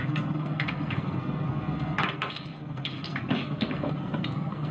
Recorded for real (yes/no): no